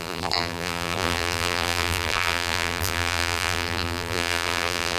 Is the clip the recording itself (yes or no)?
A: no